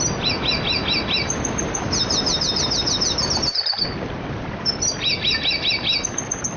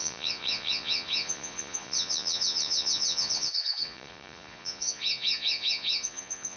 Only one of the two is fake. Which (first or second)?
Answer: second